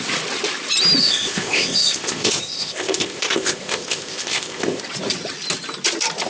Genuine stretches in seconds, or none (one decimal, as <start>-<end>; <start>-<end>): 0.0-1.0; 4.8-6.3